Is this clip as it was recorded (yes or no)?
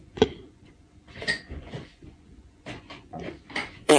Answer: no